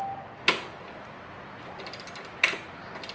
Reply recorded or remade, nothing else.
recorded